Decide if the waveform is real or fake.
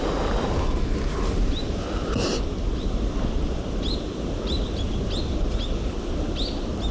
real